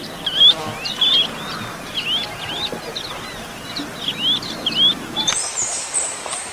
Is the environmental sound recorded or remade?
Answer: recorded